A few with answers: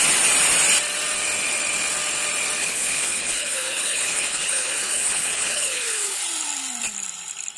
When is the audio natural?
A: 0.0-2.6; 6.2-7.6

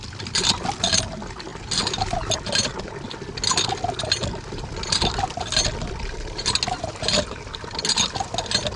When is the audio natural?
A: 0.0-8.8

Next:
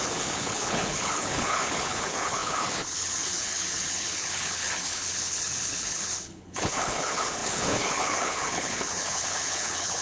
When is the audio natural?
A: none